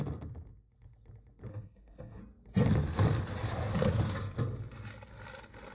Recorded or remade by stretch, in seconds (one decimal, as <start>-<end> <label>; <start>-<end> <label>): 0.0-1.5 recorded; 1.5-2.2 remade; 2.2-5.7 recorded